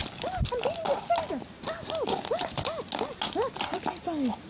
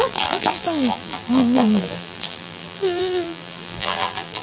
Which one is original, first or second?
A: first